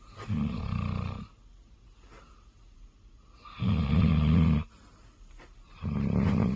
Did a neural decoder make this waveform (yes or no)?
no